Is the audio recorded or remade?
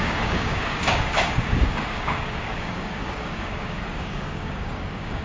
remade